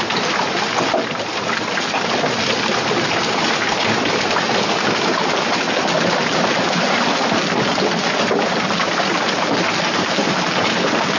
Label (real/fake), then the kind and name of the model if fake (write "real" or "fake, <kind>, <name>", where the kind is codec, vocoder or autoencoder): real